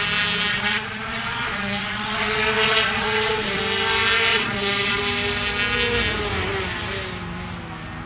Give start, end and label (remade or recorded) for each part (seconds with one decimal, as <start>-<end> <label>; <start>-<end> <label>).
0.0-0.5 recorded; 0.5-3.6 remade; 3.6-4.3 recorded; 4.3-5.0 remade; 5.0-8.1 recorded